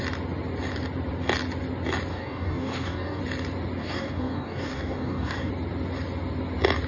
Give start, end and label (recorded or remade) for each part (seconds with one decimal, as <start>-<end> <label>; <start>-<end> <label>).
0.0-2.1 recorded; 2.1-3.2 remade; 3.2-3.8 recorded; 3.8-5.5 remade; 5.5-6.9 recorded